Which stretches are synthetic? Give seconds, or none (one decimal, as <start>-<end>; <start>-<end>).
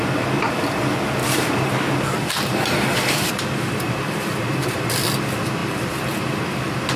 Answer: 1.2-3.4